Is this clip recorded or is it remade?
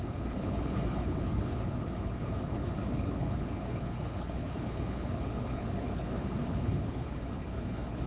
remade